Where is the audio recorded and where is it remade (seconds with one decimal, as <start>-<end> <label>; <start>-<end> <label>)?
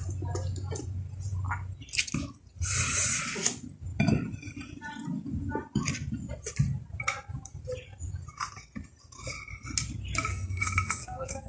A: 0.0-10.3 recorded; 10.3-11.5 remade